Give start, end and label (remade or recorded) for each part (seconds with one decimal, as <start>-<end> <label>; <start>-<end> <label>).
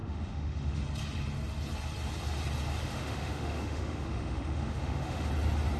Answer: 0.0-0.8 remade; 0.8-2.8 recorded; 2.8-5.3 remade; 5.3-5.8 recorded